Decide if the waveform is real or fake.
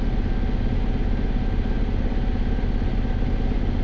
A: real